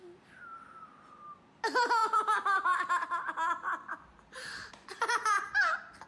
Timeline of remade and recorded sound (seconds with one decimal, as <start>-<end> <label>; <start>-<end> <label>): 0.0-2.0 recorded; 2.0-6.1 remade